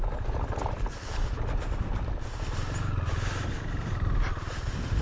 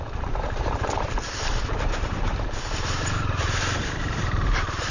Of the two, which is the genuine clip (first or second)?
first